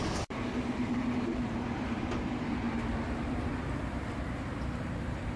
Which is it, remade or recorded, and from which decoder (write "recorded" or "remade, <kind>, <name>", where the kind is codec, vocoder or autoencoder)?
remade, vocoder, BigVGAN v2